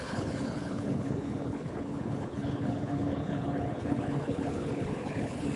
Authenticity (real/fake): fake